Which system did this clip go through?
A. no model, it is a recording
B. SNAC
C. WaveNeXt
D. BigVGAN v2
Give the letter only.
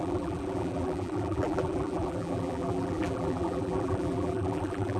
D